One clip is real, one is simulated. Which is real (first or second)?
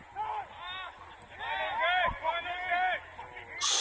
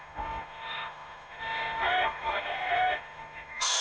first